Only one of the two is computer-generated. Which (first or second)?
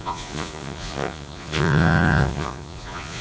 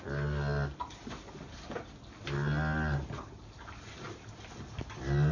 first